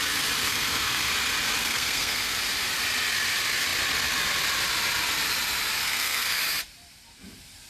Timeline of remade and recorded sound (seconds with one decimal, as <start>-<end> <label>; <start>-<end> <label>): 0.0-0.4 recorded; 0.4-1.1 remade; 1.1-1.6 recorded; 1.6-2.4 remade; 2.4-5.8 recorded; 5.8-6.4 remade; 6.4-7.7 recorded